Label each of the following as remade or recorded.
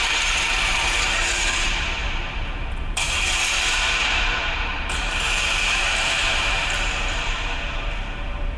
remade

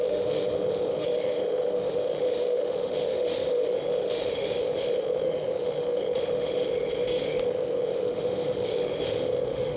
remade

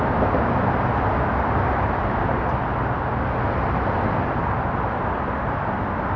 recorded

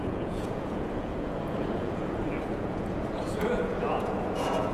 remade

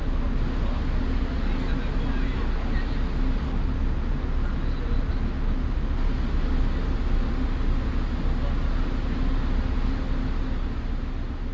recorded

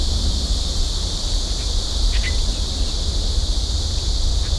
recorded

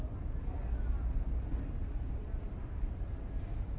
recorded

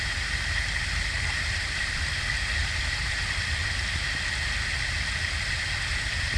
recorded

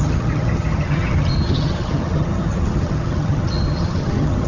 remade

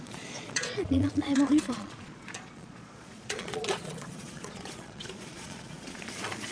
remade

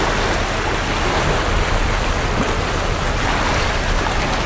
recorded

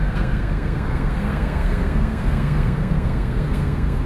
remade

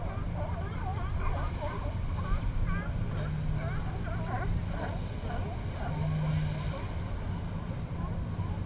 recorded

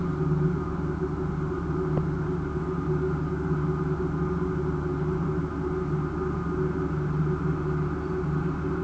recorded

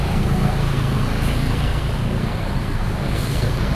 remade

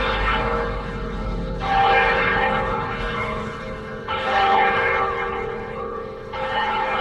remade